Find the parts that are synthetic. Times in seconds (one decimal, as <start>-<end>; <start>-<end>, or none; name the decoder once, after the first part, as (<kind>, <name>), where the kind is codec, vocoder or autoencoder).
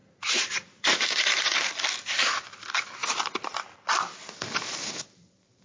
0.0-1.7 (vocoder, Vocos)